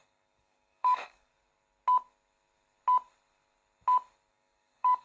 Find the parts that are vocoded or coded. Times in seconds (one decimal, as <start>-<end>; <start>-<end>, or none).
0.0-1.3; 4.3-5.0